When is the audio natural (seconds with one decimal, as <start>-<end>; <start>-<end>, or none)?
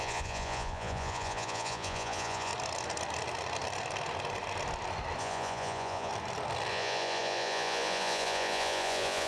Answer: 2.5-5.2; 6.1-6.7